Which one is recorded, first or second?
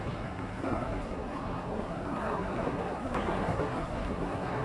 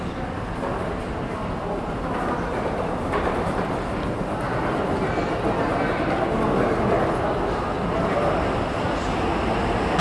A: second